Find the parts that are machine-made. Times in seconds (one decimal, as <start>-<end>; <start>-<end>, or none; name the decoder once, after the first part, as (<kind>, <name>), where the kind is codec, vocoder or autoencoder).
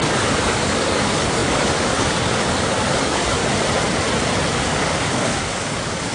0.0-3.4 (codec, DAC); 4.5-6.1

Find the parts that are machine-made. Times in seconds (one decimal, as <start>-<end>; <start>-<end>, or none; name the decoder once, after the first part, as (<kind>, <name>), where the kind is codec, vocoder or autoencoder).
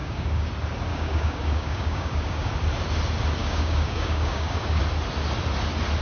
0.0-0.5 (codec, DAC); 0.9-2.5; 3.4-4.8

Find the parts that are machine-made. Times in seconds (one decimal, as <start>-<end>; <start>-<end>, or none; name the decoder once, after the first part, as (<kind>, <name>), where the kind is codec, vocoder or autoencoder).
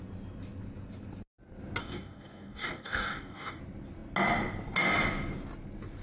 1.8-3.6 (codec, DAC)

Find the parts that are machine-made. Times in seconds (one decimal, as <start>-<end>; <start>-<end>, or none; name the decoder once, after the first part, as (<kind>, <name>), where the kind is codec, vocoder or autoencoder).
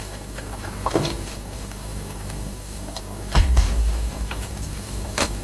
0.0-5.4 (codec, DAC)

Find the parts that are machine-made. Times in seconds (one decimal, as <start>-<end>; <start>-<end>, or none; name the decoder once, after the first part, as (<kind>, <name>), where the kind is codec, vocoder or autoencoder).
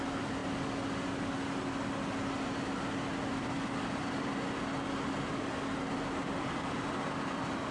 none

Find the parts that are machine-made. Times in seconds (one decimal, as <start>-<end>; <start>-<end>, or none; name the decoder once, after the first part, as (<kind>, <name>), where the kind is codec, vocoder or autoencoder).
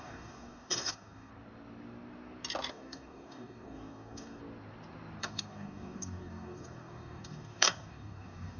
0.0-1.3 (codec, DAC); 2.7-4.4; 5.2-8.6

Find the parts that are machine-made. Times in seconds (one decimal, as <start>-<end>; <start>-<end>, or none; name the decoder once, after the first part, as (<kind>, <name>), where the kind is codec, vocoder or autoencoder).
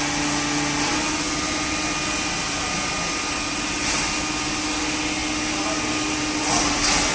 none